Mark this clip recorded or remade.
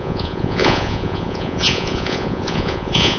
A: remade